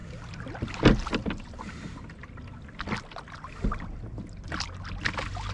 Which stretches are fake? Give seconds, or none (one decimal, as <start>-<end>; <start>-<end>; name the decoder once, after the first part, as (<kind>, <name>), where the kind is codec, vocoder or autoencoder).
none